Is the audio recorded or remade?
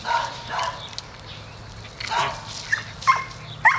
recorded